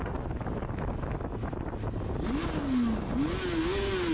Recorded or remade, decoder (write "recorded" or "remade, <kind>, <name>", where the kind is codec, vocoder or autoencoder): recorded